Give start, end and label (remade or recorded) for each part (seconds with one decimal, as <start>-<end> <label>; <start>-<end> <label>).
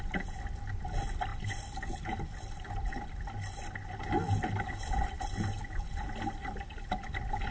0.0-7.5 recorded